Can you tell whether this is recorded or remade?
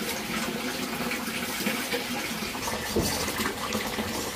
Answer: recorded